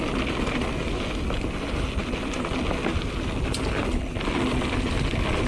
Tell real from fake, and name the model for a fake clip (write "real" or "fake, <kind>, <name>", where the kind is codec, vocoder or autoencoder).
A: real